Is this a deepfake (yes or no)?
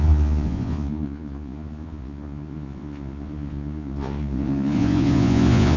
yes